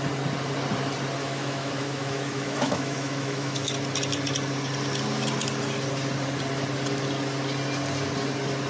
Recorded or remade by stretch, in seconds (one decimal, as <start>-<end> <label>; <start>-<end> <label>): 0.0-1.2 recorded; 1.2-3.7 remade; 3.7-8.7 recorded